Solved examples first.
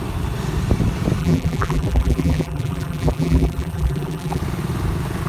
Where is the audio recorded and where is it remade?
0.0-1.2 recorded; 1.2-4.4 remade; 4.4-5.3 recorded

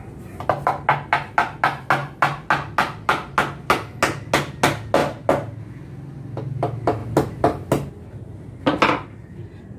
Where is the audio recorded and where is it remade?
0.0-9.8 recorded

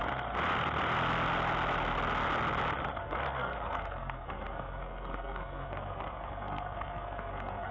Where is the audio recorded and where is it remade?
0.0-3.0 recorded; 3.0-7.7 remade

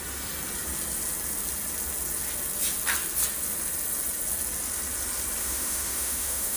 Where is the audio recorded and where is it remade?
0.0-5.4 recorded; 5.4-6.6 remade

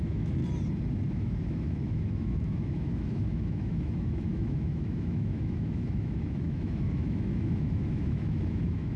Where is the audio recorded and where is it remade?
0.0-0.4 remade; 0.4-1.1 recorded; 1.1-9.0 remade

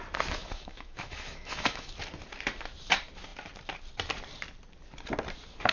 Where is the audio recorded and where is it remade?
0.0-0.4 recorded; 0.4-2.0 remade; 2.0-5.7 recorded

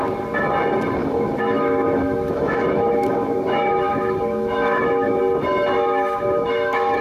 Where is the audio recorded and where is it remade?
0.0-1.0 recorded; 1.0-5.2 remade; 5.2-5.7 recorded; 5.7-7.0 remade

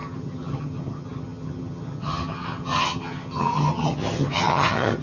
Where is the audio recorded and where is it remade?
0.0-5.0 remade